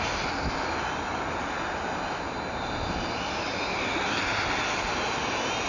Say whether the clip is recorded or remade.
recorded